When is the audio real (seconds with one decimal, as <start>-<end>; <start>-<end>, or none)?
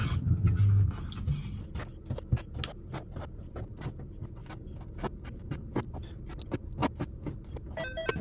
0.6-8.2